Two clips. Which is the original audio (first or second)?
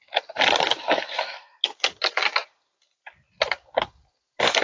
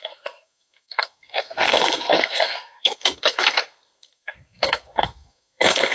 first